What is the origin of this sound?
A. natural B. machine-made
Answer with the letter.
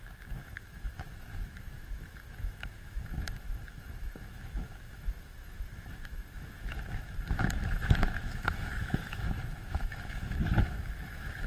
B